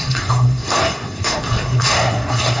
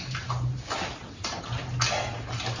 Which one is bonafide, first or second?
second